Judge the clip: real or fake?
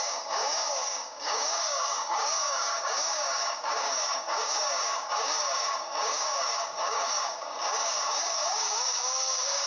fake